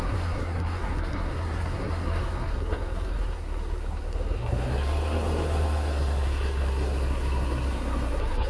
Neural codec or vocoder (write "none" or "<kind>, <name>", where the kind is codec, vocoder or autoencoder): codec, SNAC